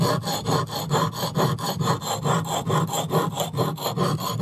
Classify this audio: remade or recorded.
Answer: recorded